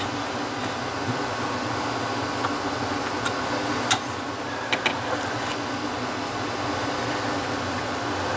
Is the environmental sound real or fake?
real